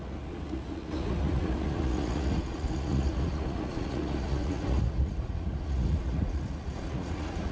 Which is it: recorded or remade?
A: remade